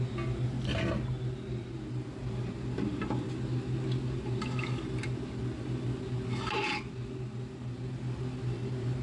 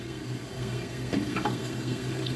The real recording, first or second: first